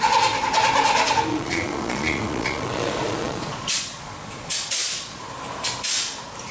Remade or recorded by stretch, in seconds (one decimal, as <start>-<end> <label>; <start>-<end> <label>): 0.0-1.3 recorded; 1.3-5.2 remade; 5.2-6.5 recorded